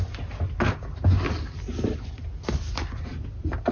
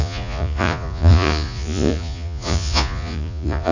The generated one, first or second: second